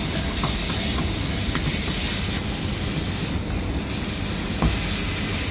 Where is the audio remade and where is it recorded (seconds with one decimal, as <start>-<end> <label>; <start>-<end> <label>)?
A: 0.0-5.5 recorded